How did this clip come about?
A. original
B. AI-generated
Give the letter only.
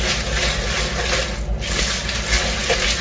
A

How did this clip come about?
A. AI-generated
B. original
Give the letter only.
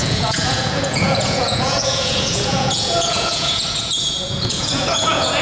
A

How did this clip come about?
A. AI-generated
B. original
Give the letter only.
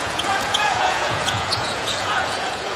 A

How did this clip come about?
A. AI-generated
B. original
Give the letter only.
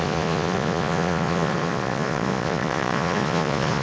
A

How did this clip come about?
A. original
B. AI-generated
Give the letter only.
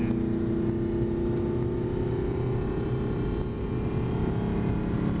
A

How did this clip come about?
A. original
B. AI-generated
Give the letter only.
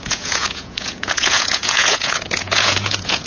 B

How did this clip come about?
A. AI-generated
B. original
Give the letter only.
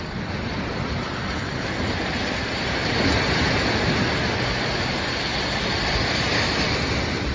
B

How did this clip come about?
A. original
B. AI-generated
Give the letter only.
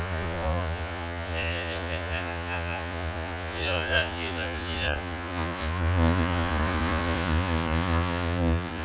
B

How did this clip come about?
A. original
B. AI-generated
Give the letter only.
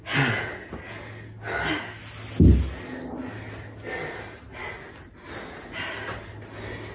A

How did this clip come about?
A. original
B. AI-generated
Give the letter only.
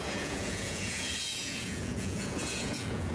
B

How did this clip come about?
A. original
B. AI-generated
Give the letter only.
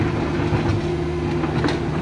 A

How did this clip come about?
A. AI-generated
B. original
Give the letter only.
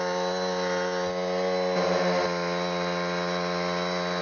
B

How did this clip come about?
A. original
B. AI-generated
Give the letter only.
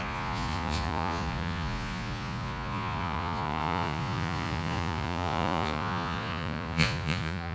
B